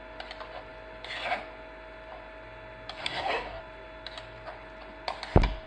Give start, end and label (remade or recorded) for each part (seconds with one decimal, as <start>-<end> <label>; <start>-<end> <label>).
0.0-3.0 recorded; 3.0-3.6 remade; 3.6-5.7 recorded

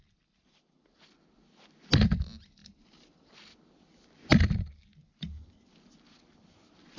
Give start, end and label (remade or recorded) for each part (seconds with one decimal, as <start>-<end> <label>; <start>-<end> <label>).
0.0-7.0 recorded

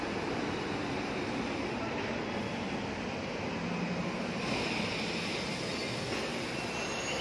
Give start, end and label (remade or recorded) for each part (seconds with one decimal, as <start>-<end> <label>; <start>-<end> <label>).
0.0-7.2 recorded

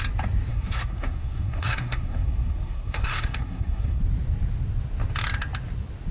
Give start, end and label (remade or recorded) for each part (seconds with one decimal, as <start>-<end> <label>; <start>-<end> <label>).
0.0-0.5 recorded; 0.5-4.0 remade; 4.0-6.1 recorded

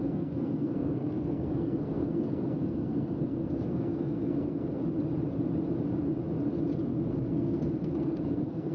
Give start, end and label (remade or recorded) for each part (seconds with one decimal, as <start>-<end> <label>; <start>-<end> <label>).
0.0-4.8 remade; 4.8-7.1 recorded; 7.1-8.7 remade

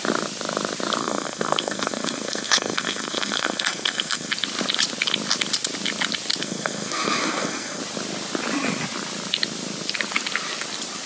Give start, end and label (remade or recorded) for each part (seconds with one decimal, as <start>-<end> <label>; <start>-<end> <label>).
0.0-1.0 recorded; 1.0-4.3 remade; 4.3-6.4 recorded; 6.4-7.8 remade; 7.8-11.1 recorded

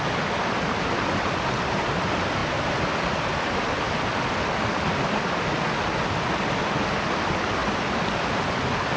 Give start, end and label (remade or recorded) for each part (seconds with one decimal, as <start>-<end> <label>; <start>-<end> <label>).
0.0-9.0 recorded